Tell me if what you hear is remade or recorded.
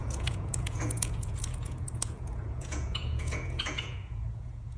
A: remade